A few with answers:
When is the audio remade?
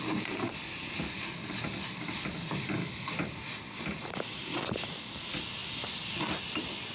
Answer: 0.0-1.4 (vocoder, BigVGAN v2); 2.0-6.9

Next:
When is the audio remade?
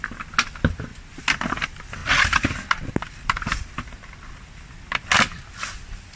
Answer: none